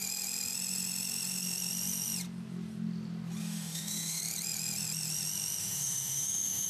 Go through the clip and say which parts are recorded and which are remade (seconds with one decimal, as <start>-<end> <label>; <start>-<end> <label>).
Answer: 0.0-3.4 recorded; 3.4-4.2 remade; 4.2-5.6 recorded; 5.6-6.7 remade